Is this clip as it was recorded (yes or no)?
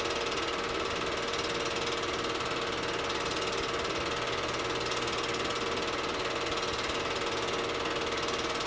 yes